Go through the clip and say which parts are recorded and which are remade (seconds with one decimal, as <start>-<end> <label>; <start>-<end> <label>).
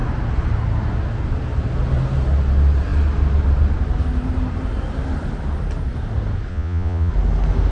0.0-6.5 recorded; 6.5-7.1 remade; 7.1-7.7 recorded